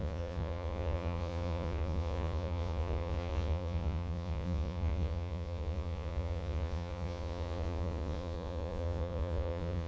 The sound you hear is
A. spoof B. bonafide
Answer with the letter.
A